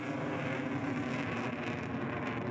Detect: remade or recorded recorded